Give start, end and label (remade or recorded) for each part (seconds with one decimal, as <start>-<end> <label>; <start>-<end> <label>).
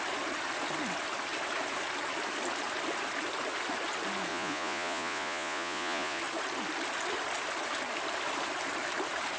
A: 0.0-4.3 recorded; 4.3-6.2 remade; 6.2-9.4 recorded